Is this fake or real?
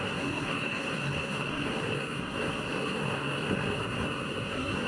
fake